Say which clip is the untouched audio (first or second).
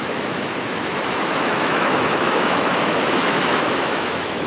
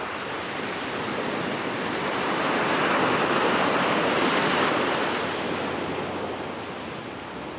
second